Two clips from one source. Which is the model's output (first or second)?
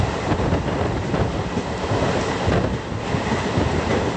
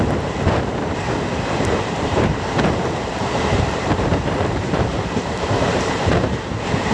second